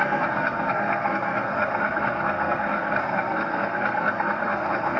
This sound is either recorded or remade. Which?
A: remade